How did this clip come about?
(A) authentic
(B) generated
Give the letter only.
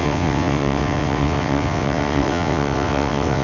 B